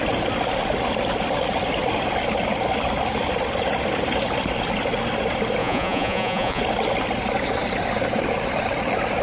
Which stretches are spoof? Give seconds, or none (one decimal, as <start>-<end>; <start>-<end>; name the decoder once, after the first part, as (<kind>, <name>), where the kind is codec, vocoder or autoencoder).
5.6-6.6 (vocoder, Vocos)